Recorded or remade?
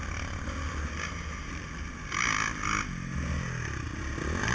recorded